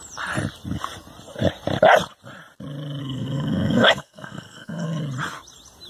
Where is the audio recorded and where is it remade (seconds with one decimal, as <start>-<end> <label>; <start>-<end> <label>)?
0.0-3.0 recorded; 3.0-5.0 remade; 5.0-5.9 recorded